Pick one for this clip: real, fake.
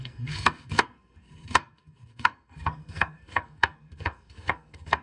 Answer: fake